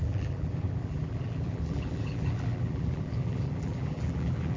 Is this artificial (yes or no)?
yes